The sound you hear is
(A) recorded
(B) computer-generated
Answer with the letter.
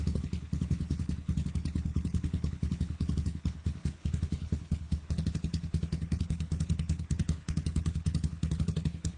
B